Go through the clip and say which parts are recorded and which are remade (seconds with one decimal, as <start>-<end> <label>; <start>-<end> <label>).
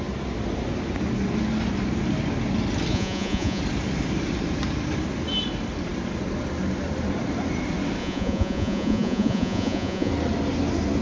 0.0-2.9 recorded; 2.9-3.6 remade; 3.6-8.0 recorded; 8.0-10.1 remade; 10.1-11.0 recorded